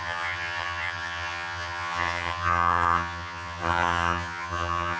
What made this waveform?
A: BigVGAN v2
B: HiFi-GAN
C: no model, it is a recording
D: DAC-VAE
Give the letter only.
B